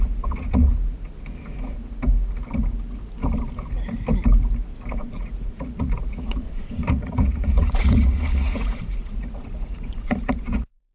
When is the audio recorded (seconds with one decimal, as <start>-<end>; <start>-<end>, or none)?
0.7-4.9